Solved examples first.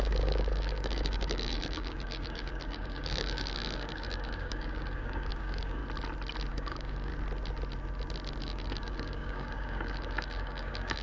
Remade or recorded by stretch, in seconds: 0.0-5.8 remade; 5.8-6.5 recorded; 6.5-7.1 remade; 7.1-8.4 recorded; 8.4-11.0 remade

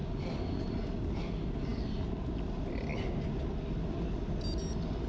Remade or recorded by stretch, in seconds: 0.0-5.1 recorded

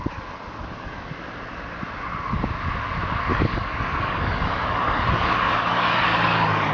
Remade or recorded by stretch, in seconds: 0.0-3.3 recorded; 3.3-6.7 remade

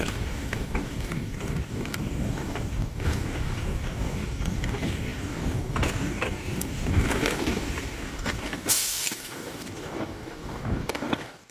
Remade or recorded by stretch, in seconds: 0.0-11.5 remade